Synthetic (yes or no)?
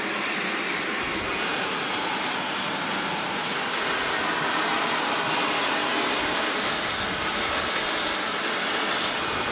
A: no